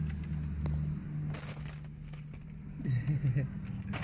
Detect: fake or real real